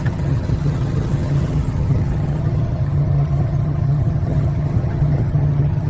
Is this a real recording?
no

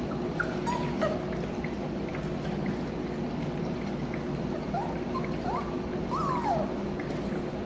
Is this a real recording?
yes